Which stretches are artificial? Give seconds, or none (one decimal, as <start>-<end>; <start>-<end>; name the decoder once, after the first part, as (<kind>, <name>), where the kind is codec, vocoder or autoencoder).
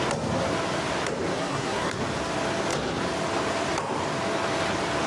1.3-2.0 (codec, SNAC)